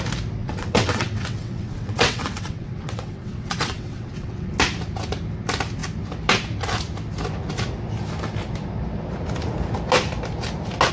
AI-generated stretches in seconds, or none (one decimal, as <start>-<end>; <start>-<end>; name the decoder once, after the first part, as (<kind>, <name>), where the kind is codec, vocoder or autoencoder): 0.4-4.5 (vocoder, WaveNeXt)